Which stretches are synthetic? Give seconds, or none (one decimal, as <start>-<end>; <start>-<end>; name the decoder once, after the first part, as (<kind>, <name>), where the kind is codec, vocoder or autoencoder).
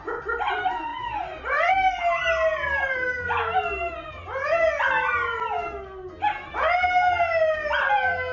none